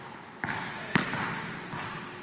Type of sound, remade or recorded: recorded